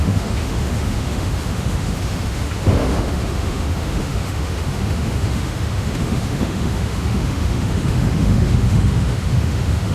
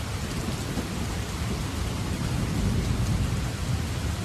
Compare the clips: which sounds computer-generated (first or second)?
first